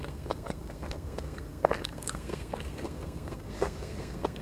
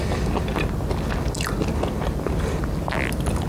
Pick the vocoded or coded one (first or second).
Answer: first